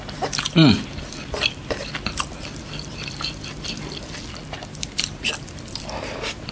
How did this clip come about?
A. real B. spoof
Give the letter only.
A